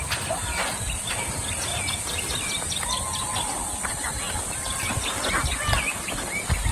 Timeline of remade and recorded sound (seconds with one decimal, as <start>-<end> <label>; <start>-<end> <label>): 0.0-6.7 recorded